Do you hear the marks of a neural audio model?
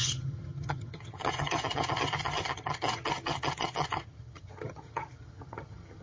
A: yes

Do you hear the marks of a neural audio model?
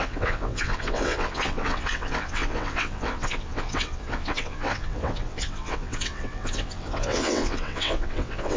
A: yes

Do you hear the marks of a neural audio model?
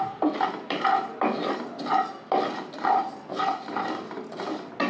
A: no